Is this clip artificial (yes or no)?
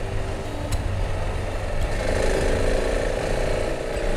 no